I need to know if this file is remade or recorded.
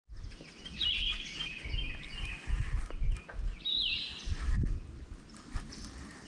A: recorded